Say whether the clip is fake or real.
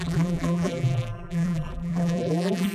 fake